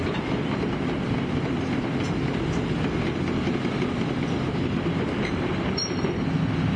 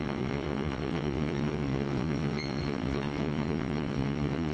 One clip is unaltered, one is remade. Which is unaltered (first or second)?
first